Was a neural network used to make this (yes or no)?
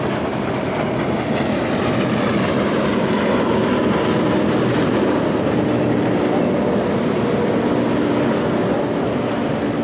no